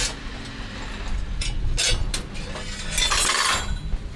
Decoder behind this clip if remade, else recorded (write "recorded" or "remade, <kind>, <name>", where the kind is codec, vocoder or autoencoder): recorded